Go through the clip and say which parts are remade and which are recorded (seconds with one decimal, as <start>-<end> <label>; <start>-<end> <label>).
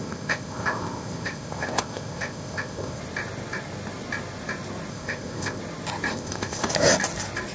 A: 0.0-3.0 remade; 3.0-4.9 recorded; 4.9-5.6 remade; 5.6-6.1 recorded; 6.1-6.7 remade; 6.7-7.5 recorded